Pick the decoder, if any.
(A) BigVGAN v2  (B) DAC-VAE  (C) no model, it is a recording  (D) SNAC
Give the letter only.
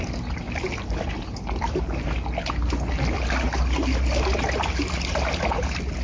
C